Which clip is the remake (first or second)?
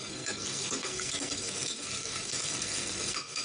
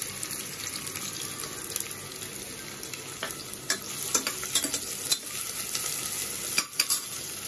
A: first